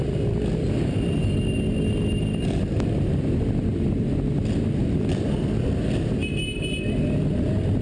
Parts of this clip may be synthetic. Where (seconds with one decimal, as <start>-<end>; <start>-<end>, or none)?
none